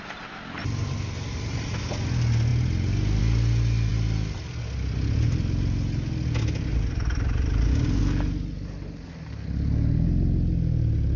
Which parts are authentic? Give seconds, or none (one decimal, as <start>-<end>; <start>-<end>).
0.0-0.6; 1.7-6.7; 8.0-11.2